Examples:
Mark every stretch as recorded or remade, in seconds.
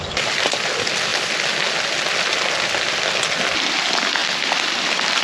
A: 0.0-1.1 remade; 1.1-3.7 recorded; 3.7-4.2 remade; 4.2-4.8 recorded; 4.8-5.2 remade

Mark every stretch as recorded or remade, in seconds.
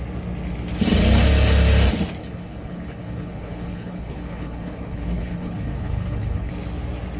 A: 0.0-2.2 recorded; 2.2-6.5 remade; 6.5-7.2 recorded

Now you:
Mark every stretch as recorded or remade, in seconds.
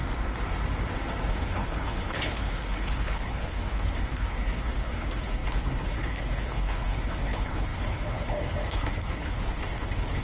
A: 0.0-1.3 recorded; 1.3-10.2 remade